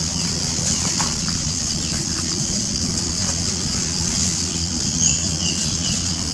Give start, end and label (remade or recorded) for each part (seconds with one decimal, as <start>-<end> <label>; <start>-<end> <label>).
0.0-6.3 remade